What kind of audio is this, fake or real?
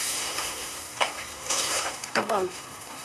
fake